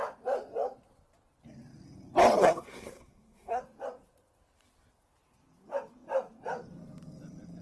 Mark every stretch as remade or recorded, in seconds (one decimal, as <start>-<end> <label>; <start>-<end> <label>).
0.0-2.4 recorded; 2.4-3.6 remade; 3.6-7.6 recorded